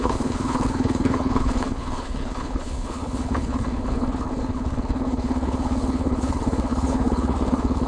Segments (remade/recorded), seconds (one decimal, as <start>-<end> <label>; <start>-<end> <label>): 0.0-7.9 remade